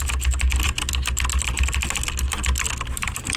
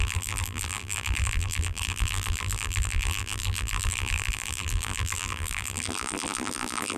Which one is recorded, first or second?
first